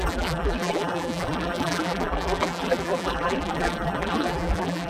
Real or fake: fake